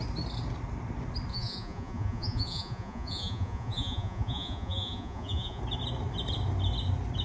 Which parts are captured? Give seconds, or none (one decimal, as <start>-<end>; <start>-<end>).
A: 0.0-1.3; 5.6-7.2